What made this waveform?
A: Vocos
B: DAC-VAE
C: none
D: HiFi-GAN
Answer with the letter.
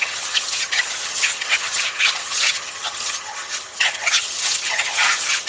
D